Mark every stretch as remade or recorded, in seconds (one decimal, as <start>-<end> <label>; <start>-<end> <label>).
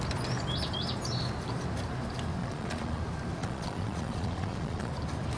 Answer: 0.0-2.4 recorded; 2.4-3.0 remade; 3.0-3.4 recorded; 3.4-4.9 remade; 4.9-5.4 recorded